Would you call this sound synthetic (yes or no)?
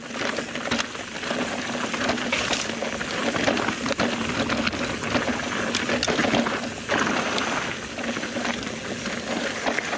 no